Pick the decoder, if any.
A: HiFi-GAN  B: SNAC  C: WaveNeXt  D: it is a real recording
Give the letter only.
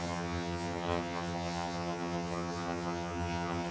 A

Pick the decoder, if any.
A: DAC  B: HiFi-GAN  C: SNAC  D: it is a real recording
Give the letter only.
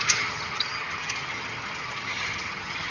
B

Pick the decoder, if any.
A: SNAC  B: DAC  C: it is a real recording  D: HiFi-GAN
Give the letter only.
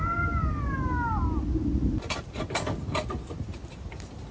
C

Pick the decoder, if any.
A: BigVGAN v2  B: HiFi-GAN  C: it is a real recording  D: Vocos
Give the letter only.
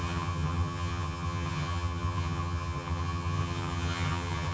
B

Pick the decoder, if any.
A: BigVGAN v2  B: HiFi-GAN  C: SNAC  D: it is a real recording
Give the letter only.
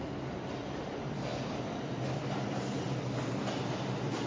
D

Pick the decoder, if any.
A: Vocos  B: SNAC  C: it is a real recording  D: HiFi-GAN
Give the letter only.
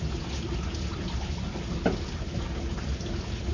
C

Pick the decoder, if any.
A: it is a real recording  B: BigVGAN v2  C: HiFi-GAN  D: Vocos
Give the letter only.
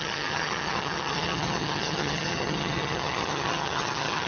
C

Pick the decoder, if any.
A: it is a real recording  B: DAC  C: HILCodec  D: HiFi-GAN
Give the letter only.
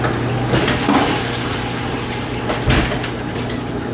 A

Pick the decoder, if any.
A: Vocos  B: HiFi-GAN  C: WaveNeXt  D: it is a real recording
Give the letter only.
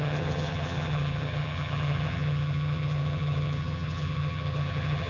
B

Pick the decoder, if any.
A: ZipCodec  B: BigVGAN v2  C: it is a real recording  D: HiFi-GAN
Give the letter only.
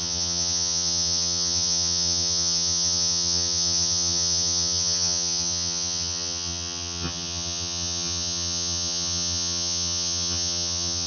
D